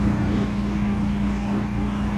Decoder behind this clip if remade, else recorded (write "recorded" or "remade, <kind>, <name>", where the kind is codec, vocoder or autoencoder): remade, codec, DAC